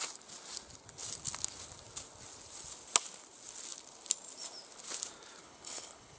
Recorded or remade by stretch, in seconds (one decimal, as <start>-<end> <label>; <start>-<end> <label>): 0.0-5.4 recorded; 5.4-6.2 remade